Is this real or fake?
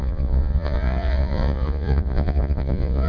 fake